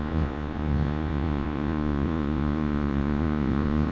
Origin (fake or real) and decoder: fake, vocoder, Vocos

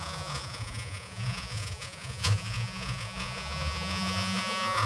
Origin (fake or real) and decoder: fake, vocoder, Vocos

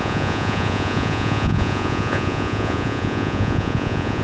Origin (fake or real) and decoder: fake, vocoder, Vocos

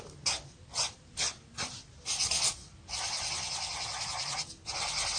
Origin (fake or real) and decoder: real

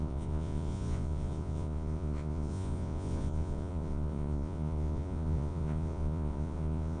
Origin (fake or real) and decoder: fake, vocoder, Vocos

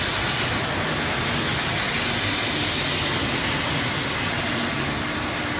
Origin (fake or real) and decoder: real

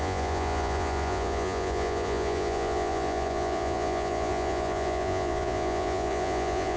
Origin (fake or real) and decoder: fake, vocoder, Vocos